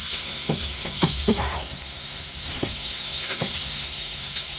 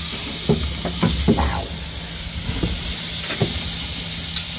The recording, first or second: second